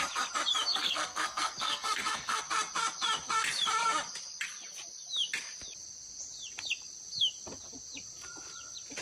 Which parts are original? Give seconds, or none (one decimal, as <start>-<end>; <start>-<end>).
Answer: 0.0-0.7; 2.4-9.0